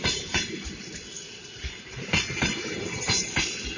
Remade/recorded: remade